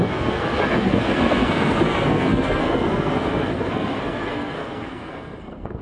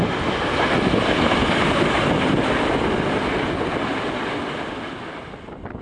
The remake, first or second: first